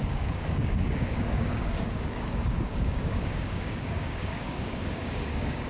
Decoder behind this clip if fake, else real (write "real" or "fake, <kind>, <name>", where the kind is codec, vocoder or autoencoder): fake, codec, DAC